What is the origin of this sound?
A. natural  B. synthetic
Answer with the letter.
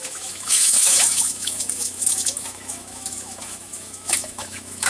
B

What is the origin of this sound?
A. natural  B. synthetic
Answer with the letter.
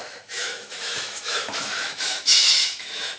B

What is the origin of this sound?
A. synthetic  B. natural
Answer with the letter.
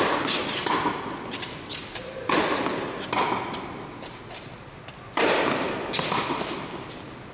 B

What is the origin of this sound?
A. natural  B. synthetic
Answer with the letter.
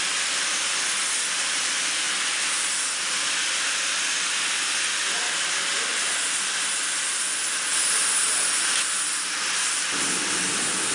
A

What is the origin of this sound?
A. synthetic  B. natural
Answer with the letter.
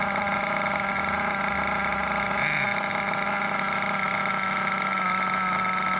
B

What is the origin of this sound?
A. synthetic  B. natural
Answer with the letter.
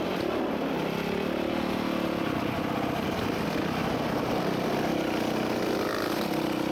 B